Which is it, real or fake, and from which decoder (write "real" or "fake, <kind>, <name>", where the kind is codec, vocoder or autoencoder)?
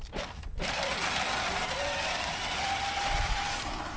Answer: real